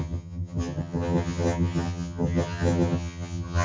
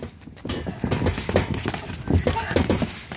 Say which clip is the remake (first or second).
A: first